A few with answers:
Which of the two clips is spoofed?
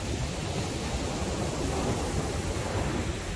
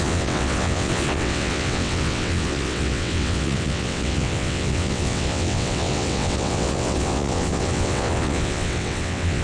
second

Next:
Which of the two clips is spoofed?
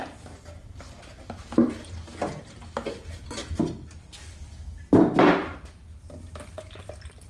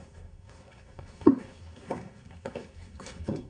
second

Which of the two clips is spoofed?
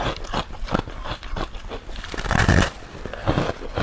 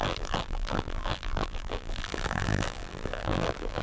second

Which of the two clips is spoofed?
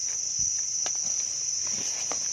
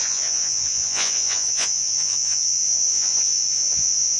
second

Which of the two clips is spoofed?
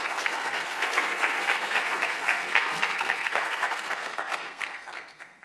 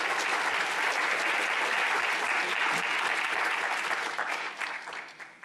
first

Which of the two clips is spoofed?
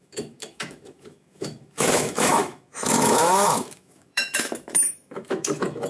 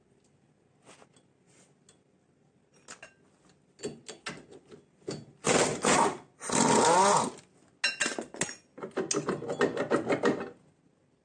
first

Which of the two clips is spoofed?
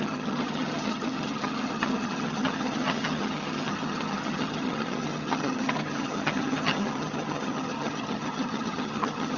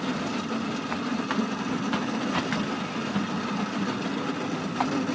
first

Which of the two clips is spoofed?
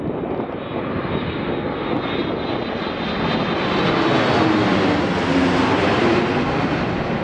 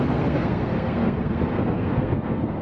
second